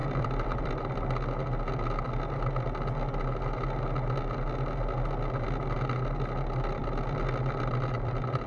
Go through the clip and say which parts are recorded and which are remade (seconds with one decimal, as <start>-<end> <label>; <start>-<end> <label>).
0.0-0.7 remade; 0.7-6.8 recorded; 6.8-8.5 remade